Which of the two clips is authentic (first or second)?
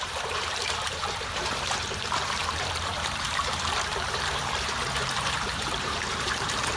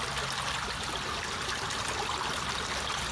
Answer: second